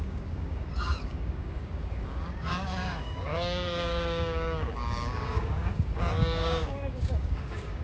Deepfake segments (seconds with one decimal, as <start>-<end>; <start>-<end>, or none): 0.0-7.8

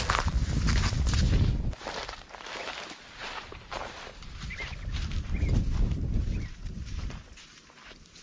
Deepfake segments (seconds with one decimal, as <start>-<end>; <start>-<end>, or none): none

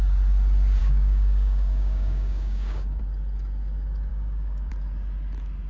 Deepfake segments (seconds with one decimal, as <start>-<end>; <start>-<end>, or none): 0.8-3.0; 4.1-4.7

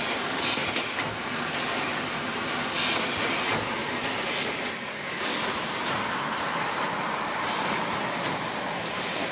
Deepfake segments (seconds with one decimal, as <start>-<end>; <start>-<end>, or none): none